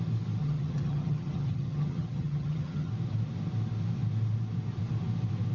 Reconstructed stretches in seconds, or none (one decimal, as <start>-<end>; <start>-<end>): 0.4-2.9